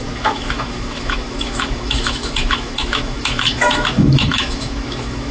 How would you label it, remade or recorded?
remade